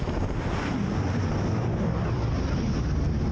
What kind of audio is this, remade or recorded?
recorded